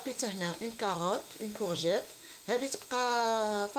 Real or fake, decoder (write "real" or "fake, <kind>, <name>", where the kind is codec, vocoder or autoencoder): fake, autoencoder, DAC-VAE